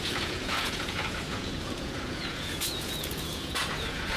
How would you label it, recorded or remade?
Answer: remade